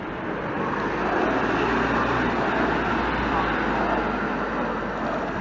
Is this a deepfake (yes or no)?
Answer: no